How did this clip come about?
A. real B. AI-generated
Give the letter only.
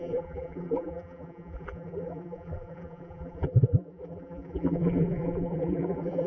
B